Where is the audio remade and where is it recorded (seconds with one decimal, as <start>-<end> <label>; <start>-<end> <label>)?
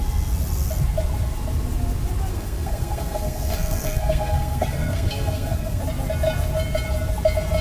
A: 0.0-2.3 recorded; 2.3-5.8 remade; 5.8-7.6 recorded